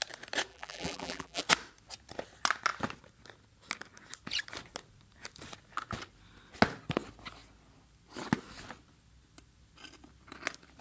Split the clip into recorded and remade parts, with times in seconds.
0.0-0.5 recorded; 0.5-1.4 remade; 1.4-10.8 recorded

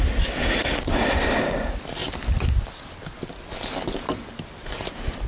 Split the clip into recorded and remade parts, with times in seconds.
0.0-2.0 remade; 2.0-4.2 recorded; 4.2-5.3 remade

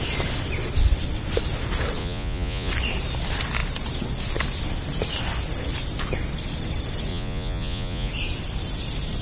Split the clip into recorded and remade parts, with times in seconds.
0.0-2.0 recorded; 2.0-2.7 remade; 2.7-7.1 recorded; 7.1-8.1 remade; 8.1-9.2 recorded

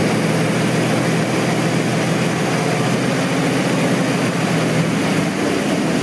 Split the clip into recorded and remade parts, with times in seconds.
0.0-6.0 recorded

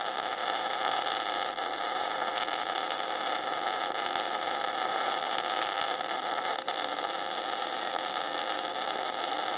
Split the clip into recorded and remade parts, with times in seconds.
0.0-9.6 recorded

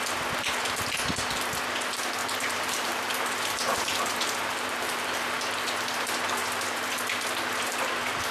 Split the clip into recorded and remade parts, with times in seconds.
0.0-2.2 recorded; 2.2-5.3 remade; 5.3-8.3 recorded

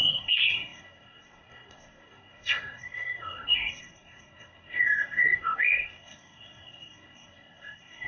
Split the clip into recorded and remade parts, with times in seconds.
0.0-8.1 remade

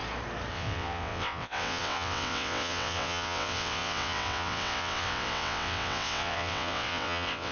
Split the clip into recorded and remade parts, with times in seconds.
0.0-0.5 recorded; 0.5-7.5 remade